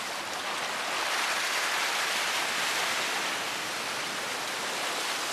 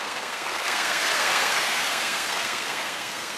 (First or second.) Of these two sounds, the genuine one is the first